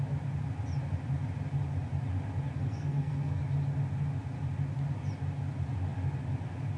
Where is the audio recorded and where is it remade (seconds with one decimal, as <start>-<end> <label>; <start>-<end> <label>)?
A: 0.0-2.6 recorded; 2.6-3.4 remade; 3.4-6.8 recorded